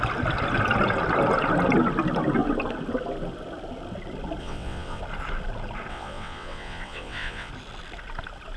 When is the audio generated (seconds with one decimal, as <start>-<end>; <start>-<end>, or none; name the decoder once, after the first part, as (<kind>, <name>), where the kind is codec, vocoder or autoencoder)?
4.4-5.0 (vocoder, WaveNeXt); 5.9-7.5